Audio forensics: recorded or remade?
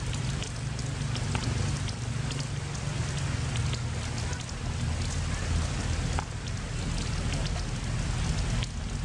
recorded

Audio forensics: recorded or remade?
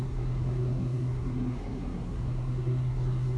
remade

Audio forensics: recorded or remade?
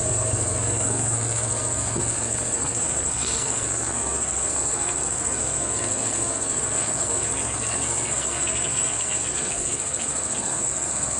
remade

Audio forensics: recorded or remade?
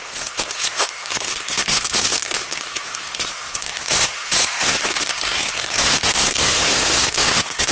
remade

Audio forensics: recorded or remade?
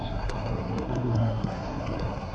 remade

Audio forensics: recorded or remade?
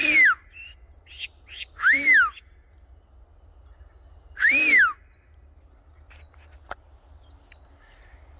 recorded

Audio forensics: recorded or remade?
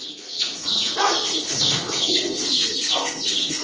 remade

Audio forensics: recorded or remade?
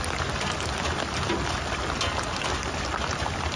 recorded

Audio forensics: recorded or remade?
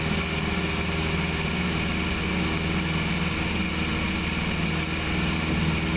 recorded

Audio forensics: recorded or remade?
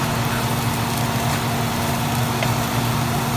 recorded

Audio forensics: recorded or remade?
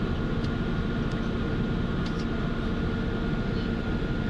recorded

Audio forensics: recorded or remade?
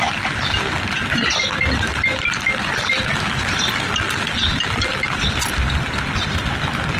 recorded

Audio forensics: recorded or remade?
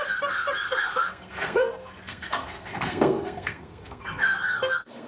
remade